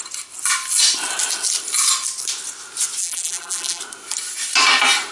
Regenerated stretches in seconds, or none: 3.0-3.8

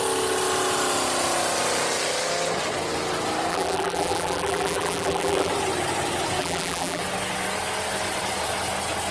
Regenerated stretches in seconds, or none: 3.5-5.5; 6.4-7.0

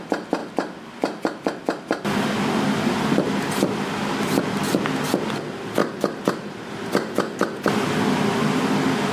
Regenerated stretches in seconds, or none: 5.8-6.7

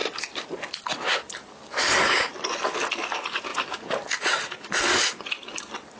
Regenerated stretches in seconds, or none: none

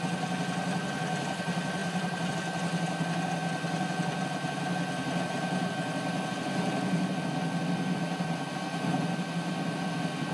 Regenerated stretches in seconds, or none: 1.8-2.3

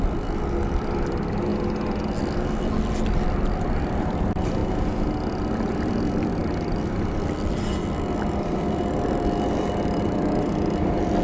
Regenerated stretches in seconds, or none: 0.0-1.5; 2.2-4.6; 5.4-11.2